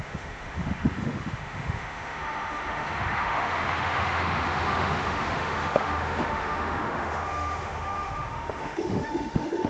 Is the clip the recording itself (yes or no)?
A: no